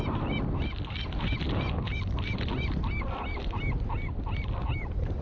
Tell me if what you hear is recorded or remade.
recorded